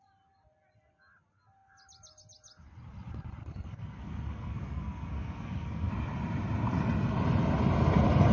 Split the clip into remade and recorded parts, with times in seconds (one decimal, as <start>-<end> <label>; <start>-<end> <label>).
0.0-3.4 recorded; 3.4-5.9 remade; 5.9-8.3 recorded